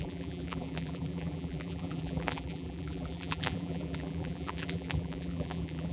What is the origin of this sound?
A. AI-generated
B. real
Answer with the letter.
A